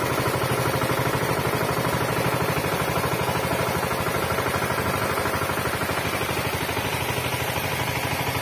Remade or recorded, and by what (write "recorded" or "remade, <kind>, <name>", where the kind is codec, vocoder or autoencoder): recorded